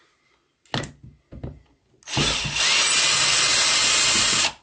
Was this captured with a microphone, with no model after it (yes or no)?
yes